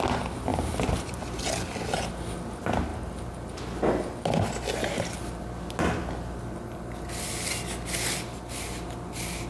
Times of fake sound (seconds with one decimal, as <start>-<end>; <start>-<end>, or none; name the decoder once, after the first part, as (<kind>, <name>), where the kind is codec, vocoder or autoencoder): none